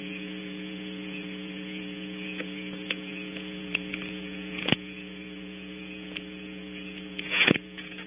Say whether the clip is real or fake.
fake